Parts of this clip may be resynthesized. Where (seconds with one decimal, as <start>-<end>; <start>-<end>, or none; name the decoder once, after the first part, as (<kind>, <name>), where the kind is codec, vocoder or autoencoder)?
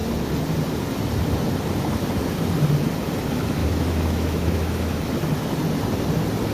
3.6-5.0 (autoencoder, DAC-VAE)